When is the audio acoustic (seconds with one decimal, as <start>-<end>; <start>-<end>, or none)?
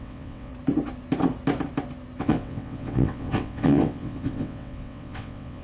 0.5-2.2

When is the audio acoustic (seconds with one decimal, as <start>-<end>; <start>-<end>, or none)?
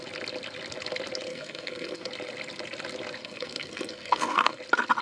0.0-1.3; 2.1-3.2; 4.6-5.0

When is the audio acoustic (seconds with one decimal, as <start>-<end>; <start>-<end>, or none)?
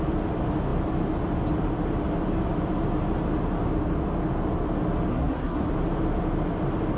0.0-5.1; 5.7-7.0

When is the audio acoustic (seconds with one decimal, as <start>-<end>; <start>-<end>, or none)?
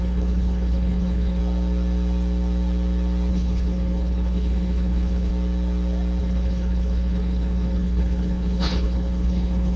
1.4-3.3; 5.3-6.2